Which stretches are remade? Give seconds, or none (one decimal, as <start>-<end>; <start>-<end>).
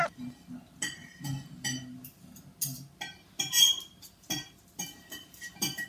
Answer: none